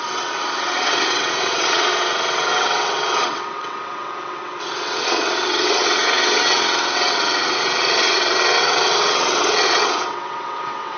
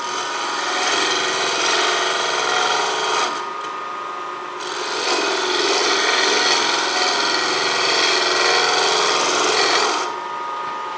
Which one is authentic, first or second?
second